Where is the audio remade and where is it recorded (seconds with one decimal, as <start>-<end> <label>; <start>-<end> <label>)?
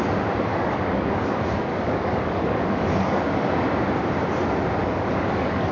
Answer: 0.0-0.5 recorded; 0.5-3.9 remade; 3.9-4.8 recorded; 4.8-5.7 remade